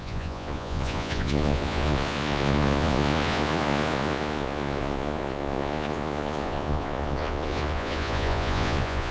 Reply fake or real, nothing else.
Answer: fake